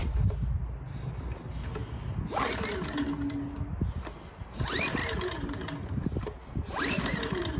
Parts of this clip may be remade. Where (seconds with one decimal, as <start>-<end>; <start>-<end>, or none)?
5.0-7.6